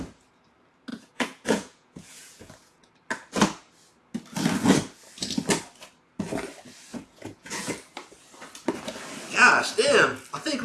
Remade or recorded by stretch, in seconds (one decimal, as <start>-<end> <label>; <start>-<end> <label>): 0.0-0.9 recorded; 0.9-2.9 remade; 2.9-6.9 recorded; 6.9-7.7 remade; 7.7-10.6 recorded